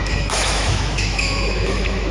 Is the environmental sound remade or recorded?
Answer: remade